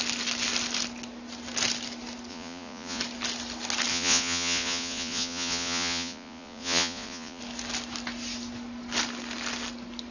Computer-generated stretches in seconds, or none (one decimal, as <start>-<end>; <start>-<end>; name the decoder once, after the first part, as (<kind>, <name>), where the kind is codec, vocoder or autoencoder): 2.3-3.0 (vocoder, Vocos); 3.9-7.4

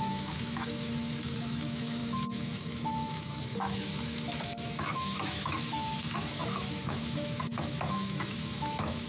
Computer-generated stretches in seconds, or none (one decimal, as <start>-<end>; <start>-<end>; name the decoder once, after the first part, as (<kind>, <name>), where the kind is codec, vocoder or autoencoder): 0.0-9.1 (autoencoder, DAC-VAE)

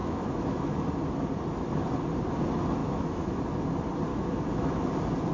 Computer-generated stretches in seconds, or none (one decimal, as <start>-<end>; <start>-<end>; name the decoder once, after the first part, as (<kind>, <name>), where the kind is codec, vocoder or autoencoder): 0.0-0.9 (autoencoder, DAC-VAE); 2.8-3.4; 4.1-4.8

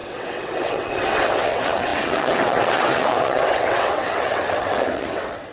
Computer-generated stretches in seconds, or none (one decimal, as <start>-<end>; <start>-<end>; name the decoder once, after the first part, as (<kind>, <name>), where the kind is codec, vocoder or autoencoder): 0.0-5.5 (vocoder, WaveNeXt)

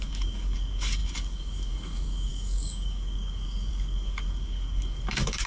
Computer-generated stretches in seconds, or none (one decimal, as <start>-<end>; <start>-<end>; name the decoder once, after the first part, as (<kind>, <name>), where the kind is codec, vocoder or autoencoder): 0.0-5.5 (codec, DAC)

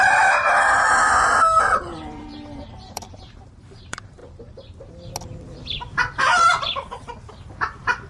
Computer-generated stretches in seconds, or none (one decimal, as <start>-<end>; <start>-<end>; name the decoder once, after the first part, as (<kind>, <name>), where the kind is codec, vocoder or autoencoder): 1.6-4.2 (vocoder, BigVGAN v2); 7.3-8.1

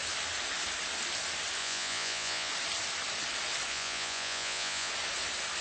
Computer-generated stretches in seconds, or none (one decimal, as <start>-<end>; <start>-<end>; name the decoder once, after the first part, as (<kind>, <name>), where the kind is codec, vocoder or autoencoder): 1.6-2.5 (vocoder, Vocos); 3.7-4.9